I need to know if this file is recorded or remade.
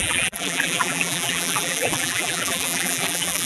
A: remade